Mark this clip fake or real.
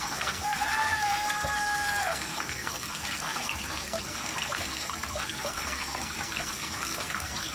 fake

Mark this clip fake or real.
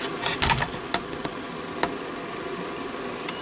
real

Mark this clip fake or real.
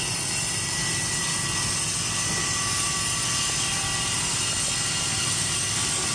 real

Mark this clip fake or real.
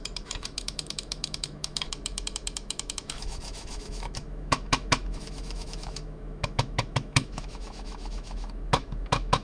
fake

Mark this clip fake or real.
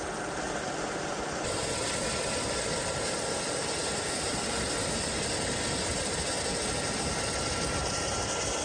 real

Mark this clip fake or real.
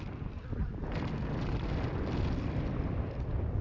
real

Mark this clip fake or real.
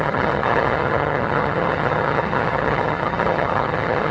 fake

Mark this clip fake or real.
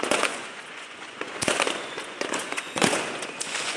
fake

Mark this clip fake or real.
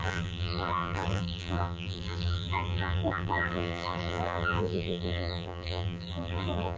fake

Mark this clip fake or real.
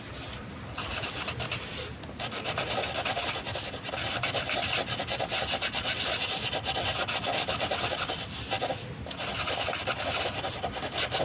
real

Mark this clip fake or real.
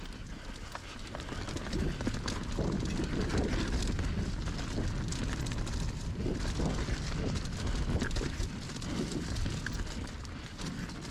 real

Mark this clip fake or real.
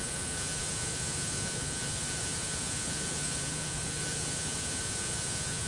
fake